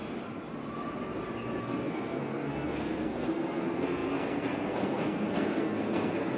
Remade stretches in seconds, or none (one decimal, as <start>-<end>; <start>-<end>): 1.6-6.4